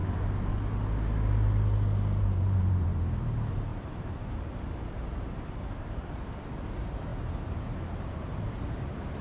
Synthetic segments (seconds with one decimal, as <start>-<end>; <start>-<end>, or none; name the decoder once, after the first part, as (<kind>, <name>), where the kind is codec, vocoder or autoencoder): 2.2-9.2 (vocoder, BigVGAN v2)